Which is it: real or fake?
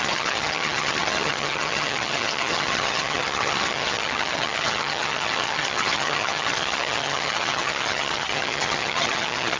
fake